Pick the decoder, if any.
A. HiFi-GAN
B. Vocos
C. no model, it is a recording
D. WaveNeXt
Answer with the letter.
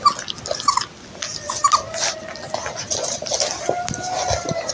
C